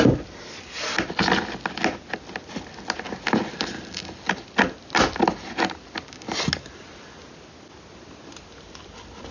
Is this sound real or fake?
real